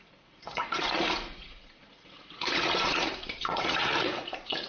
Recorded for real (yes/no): no